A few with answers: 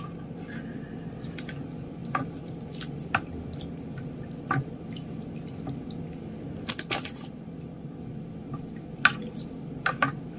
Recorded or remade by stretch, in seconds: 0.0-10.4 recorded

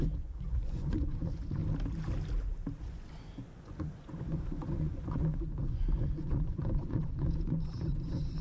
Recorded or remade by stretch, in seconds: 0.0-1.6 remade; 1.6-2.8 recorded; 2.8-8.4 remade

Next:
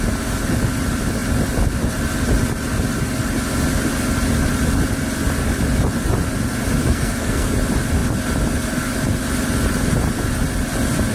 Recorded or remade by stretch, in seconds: 0.0-6.8 recorded; 6.8-7.5 remade; 7.5-11.1 recorded